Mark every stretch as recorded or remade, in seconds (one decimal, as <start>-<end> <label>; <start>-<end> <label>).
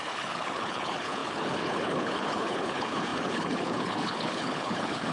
0.0-5.1 remade